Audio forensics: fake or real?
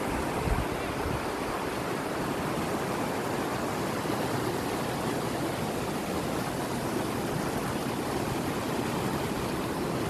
real